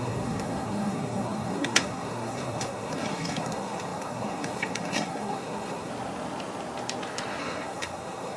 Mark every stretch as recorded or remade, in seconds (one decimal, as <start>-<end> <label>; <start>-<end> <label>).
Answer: 0.0-5.9 remade; 5.9-7.4 recorded; 7.4-8.4 remade